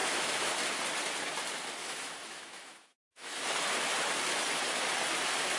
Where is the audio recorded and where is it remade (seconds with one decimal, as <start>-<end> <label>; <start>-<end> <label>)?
0.0-0.5 remade; 0.5-1.8 recorded; 1.8-3.4 remade; 3.4-5.6 recorded